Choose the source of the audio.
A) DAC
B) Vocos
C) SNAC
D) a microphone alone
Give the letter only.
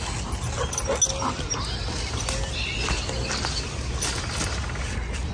D